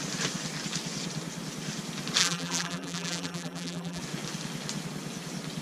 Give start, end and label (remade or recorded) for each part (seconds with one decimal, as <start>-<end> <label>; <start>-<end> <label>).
0.0-2.2 recorded; 2.2-4.0 remade; 4.0-5.6 recorded